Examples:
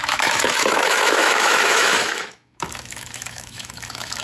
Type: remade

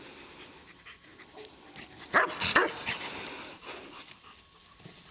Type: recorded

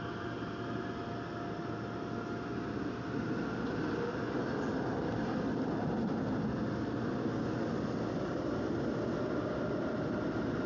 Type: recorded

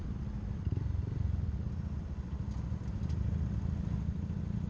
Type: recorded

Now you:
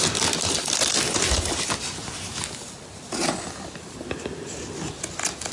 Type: recorded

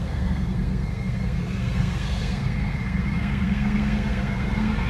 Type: remade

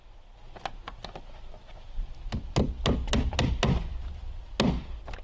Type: recorded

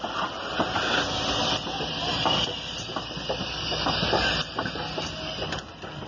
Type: recorded